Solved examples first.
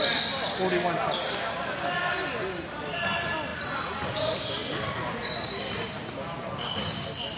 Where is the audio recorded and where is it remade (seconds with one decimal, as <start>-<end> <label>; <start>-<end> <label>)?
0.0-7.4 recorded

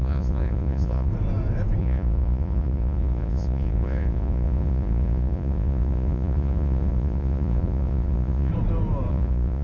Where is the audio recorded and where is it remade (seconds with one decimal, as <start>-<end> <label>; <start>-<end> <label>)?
0.0-1.1 remade; 1.1-1.8 recorded; 1.8-8.5 remade; 8.5-9.1 recorded; 9.1-9.6 remade

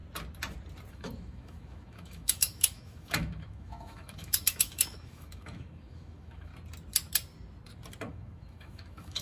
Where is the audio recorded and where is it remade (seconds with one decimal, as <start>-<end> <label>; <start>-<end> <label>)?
0.0-0.9 recorded; 0.9-6.5 remade; 6.5-8.1 recorded; 8.1-9.2 remade

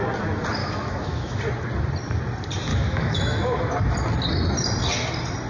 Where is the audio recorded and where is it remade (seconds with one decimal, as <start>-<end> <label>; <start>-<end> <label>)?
0.0-0.6 recorded; 0.6-1.4 remade; 1.4-2.7 recorded; 2.7-3.8 remade; 3.8-5.5 recorded

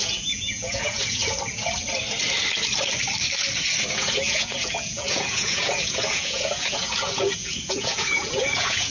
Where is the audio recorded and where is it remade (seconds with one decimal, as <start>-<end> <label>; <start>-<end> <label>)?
0.0-1.2 remade; 1.2-3.9 recorded; 3.9-8.9 remade

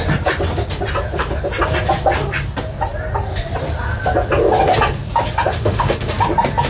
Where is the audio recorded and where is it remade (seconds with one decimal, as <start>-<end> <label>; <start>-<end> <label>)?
0.0-5.5 recorded; 5.5-6.1 remade; 6.1-6.7 recorded

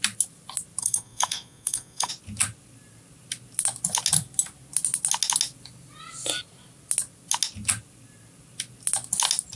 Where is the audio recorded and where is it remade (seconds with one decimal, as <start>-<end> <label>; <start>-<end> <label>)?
0.0-0.8 recorded; 0.8-2.1 remade; 2.1-9.6 recorded

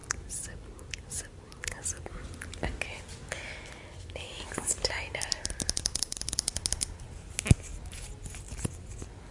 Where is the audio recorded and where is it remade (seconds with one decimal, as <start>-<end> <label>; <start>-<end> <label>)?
0.0-9.3 recorded